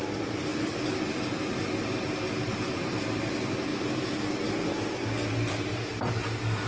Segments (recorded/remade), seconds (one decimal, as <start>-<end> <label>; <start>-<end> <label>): 0.0-6.7 recorded